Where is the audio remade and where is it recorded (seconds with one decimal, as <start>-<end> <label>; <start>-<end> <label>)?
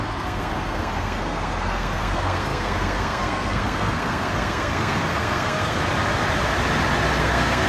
0.0-5.8 remade; 5.8-7.2 recorded; 7.2-7.7 remade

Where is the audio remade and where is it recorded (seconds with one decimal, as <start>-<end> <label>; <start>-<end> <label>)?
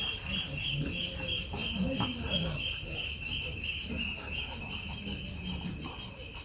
0.0-6.4 recorded